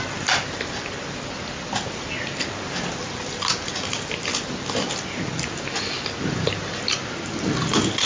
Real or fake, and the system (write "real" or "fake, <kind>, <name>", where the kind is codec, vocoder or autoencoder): real